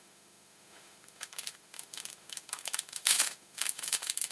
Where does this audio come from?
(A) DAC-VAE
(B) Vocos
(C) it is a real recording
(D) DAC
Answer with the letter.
A